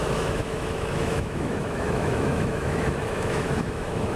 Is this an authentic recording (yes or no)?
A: no